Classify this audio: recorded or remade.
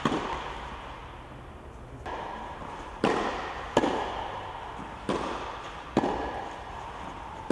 recorded